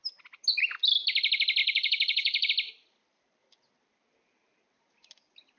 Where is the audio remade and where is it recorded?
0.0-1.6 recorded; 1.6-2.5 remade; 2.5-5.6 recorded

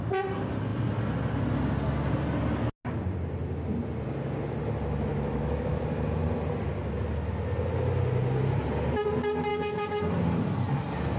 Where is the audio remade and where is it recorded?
0.0-5.1 recorded; 5.1-5.7 remade; 5.7-9.5 recorded; 9.5-10.0 remade; 10.0-11.2 recorded